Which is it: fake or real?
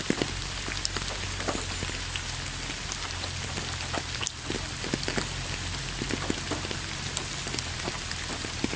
real